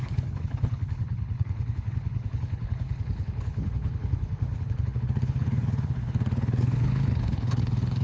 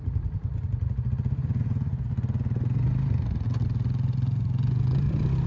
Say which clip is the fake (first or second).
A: first